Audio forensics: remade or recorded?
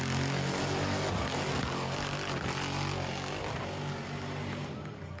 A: recorded